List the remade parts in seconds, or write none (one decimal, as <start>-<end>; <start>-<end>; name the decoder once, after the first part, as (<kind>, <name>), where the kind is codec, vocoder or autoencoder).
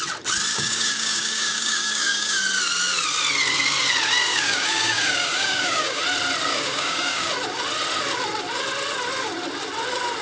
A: 0.5-2.4 (codec, DAC); 4.3-6.0; 6.5-7.3